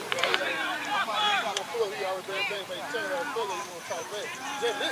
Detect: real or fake fake